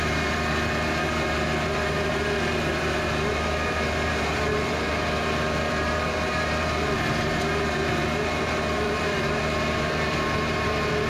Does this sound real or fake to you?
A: fake